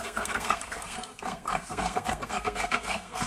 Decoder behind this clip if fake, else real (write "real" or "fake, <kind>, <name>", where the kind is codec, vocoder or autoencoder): fake, codec, SNAC